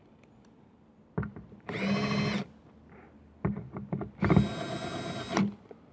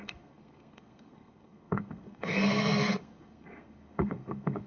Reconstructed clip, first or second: second